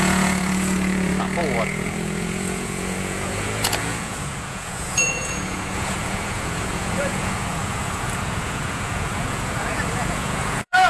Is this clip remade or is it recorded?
remade